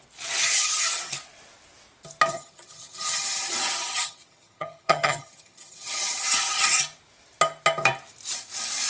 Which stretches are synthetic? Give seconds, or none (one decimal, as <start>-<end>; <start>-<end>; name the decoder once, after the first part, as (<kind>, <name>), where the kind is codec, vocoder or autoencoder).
0.4-1.0 (vocoder, HiFi-GAN); 2.3-6.8